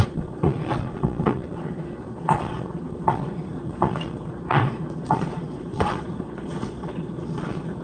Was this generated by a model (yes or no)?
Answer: yes